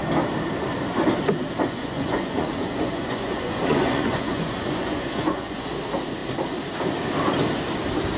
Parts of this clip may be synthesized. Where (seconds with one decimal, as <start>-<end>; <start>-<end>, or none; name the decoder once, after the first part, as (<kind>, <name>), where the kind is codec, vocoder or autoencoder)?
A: 1.6-5.7 (vocoder, Vocos)